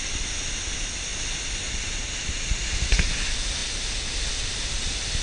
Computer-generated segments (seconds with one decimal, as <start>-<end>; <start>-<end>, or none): none